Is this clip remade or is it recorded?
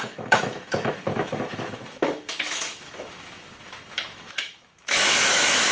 remade